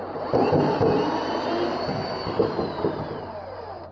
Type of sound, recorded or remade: remade